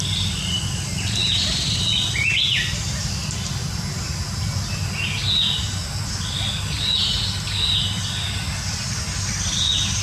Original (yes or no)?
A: yes